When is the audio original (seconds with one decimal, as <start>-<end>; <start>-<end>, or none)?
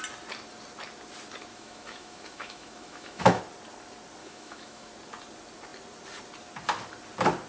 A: 0.0-1.5; 3.4-4.2; 4.9-7.5